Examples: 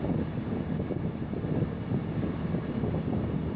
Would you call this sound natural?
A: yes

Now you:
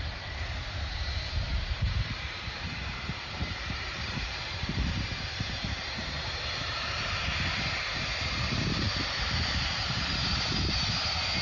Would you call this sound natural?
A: no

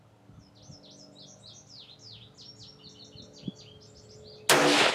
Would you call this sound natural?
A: yes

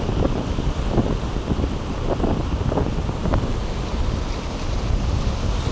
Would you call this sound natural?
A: yes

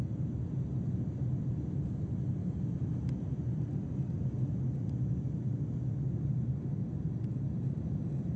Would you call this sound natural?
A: yes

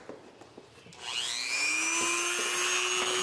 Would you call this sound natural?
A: yes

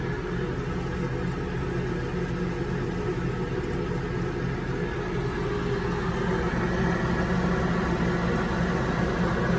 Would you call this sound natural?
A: yes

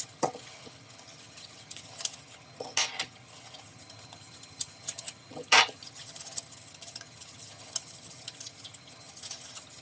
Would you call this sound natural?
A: no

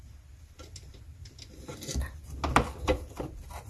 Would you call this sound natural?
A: yes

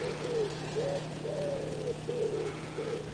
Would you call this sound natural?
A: no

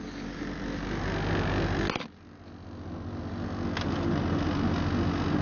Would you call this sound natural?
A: yes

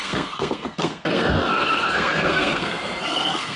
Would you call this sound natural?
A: no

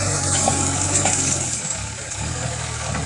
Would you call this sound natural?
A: no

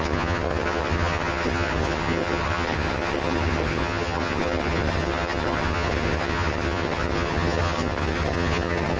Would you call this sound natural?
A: no